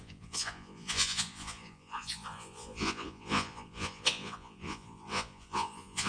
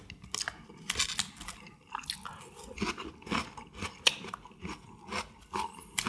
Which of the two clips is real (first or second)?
second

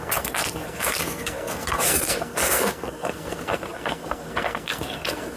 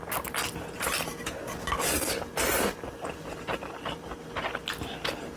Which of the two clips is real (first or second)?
second